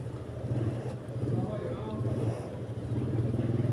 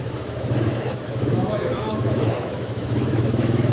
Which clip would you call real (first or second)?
first